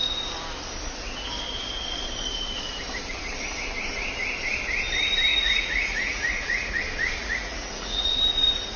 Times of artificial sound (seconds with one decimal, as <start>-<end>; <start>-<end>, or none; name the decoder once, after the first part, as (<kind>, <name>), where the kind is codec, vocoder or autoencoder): 5.3-6.8 (vocoder, Vocos); 7.2-8.1